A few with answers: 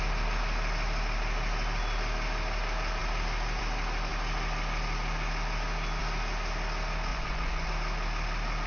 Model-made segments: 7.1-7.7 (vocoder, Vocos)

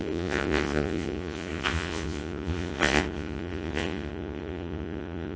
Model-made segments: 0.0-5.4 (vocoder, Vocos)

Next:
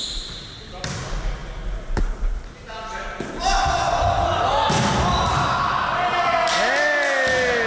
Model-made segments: none

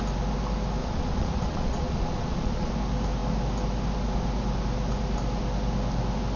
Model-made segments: 0.8-2.7 (vocoder, Vocos)